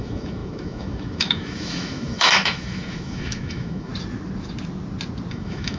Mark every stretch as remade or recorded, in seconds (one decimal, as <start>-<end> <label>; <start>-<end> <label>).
0.0-3.9 remade; 3.9-5.3 recorded; 5.3-5.8 remade